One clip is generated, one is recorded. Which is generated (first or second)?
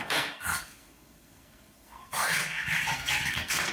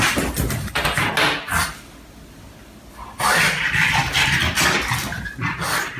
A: first